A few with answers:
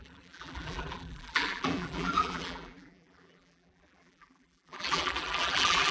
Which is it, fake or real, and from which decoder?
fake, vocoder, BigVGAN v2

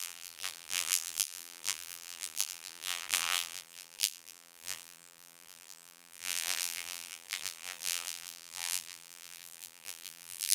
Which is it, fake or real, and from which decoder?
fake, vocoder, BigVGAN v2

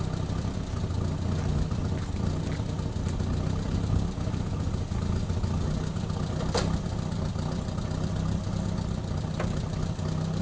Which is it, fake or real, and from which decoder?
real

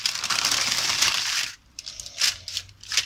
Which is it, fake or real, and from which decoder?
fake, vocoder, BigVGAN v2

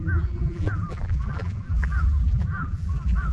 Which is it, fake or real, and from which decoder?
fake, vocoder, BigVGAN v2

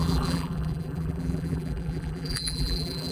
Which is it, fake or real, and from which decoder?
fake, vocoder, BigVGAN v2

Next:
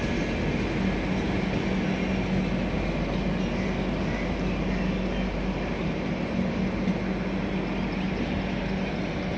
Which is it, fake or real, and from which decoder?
real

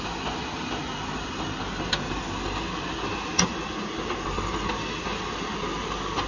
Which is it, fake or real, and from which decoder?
real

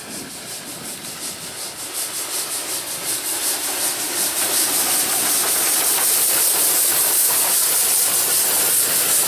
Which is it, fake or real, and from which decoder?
real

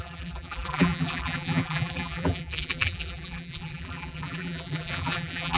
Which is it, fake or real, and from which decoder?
fake, vocoder, BigVGAN v2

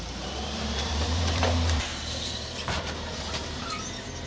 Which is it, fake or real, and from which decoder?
fake, vocoder, BigVGAN v2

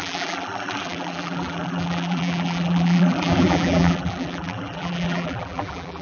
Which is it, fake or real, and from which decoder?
fake, vocoder, BigVGAN v2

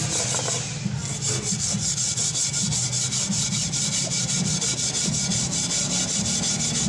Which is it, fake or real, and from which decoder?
real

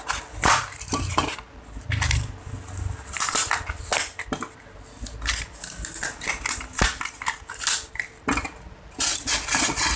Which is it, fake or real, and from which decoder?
real